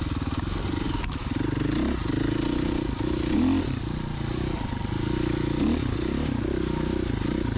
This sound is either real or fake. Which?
real